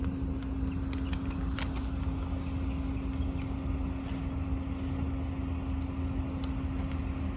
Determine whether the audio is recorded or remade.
recorded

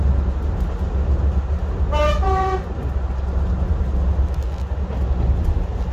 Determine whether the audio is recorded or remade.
recorded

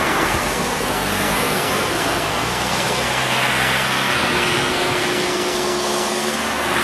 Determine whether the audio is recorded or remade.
remade